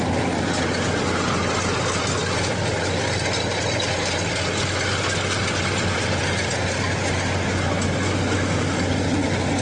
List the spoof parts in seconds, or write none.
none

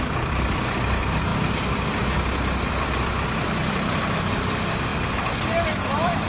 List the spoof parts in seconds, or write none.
none

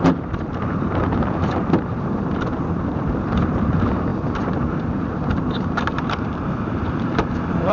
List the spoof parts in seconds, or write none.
0.0-4.1 (vocoder, BigVGAN v2); 4.6-7.7

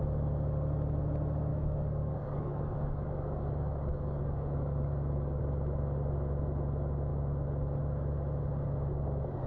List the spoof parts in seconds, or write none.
1.5-5.4 (codec, DAC)